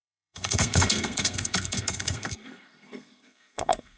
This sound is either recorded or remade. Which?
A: remade